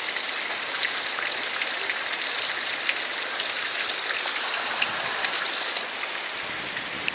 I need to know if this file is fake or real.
real